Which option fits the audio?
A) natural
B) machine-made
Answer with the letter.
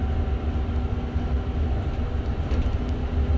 A